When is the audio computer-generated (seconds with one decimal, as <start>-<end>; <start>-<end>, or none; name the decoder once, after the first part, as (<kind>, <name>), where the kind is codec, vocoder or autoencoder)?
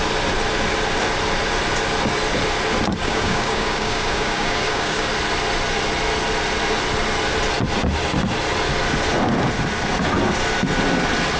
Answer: 3.0-5.1 (codec, DAC)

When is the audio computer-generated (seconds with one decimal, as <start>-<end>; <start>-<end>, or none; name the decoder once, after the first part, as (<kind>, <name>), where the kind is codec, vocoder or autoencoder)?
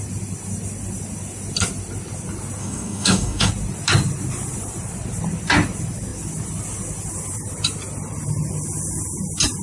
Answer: 2.6-3.5 (codec, DAC)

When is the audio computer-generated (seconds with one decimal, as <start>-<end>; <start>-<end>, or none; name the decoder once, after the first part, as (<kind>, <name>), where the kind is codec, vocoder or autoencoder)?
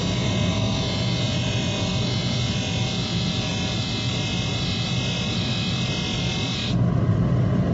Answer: none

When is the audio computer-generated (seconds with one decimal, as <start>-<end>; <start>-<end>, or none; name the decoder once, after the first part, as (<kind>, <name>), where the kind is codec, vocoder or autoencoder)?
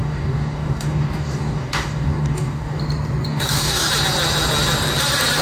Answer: 0.0-2.8 (codec, DAC); 3.3-3.9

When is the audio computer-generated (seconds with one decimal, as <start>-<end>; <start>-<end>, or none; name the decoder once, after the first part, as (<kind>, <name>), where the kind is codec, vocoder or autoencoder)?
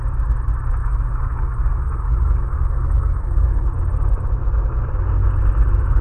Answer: 0.8-3.7 (codec, DAC)